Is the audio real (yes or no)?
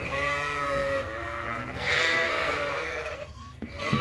no